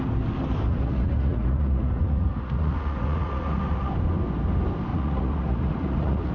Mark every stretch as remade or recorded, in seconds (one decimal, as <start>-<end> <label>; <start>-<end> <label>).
0.0-0.7 recorded; 0.7-3.9 remade; 3.9-4.9 recorded; 4.9-6.3 remade